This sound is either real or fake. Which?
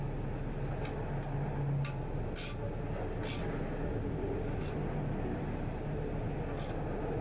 real